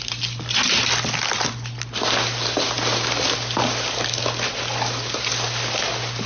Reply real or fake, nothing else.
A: real